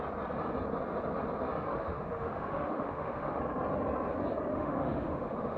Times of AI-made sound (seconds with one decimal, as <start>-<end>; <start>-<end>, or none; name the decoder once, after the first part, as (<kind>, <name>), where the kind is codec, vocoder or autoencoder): 1.7-3.4 (autoencoder, DAC-VAE); 4.5-5.6